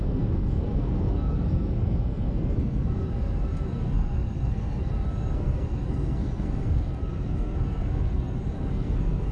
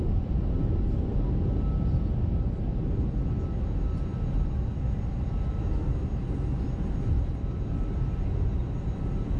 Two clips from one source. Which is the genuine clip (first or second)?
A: second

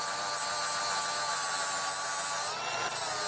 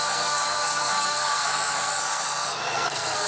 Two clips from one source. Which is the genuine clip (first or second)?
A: first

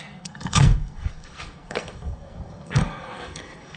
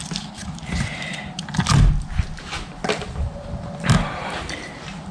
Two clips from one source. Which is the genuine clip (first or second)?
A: second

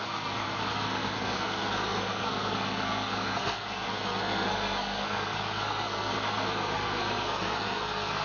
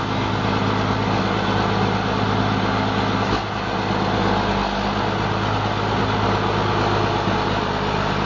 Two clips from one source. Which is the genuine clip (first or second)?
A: second